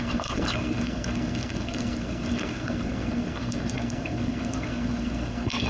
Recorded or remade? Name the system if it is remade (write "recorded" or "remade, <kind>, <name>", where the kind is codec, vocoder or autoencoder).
remade, codec, SNAC